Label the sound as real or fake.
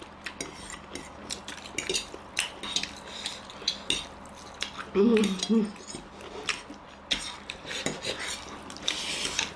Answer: real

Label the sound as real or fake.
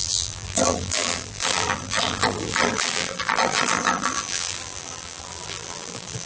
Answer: fake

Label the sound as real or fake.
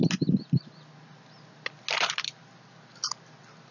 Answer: real